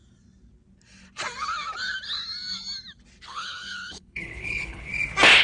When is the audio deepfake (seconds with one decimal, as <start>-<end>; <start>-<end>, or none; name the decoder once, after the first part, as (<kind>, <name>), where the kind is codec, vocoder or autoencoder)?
3.2-4.9 (codec, HILCodec)